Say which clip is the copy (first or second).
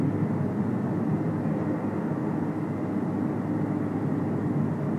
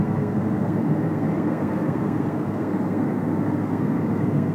second